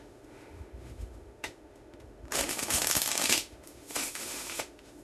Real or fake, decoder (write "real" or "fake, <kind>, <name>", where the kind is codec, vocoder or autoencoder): fake, autoencoder, DAC-VAE